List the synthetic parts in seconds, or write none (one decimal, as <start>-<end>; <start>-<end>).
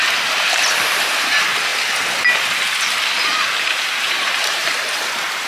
0.0-1.7; 3.6-5.5